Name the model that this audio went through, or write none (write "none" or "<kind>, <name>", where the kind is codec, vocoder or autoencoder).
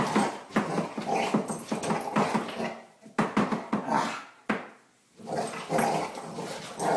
none